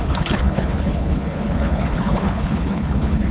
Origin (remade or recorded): remade